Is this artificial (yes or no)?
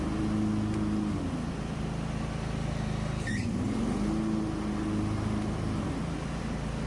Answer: no